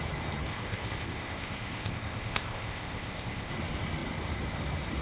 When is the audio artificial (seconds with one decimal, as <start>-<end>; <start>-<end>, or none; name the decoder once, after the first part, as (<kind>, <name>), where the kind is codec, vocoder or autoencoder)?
0.5-3.5 (codec, ZipCodec)